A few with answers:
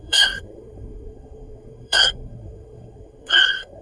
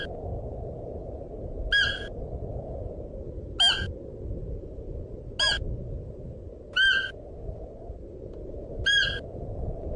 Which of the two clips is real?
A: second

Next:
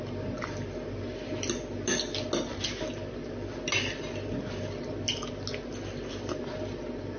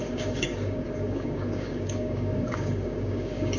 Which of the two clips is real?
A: first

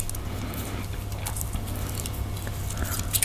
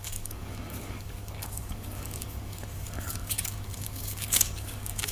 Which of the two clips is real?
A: first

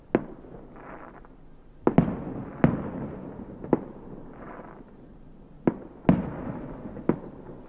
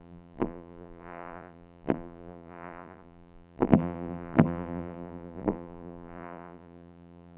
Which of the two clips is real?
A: first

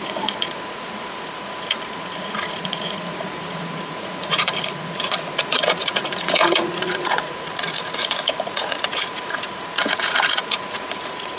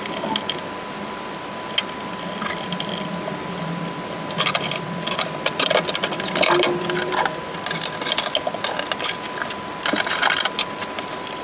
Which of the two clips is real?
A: second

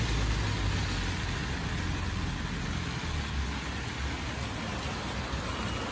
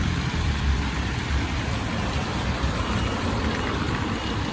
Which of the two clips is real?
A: first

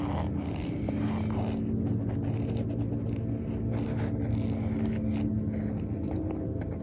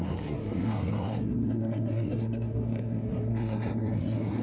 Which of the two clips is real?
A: first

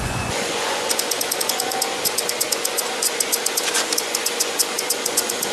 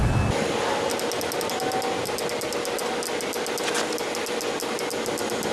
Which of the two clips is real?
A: second